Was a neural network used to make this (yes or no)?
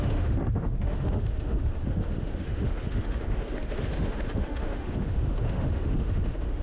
yes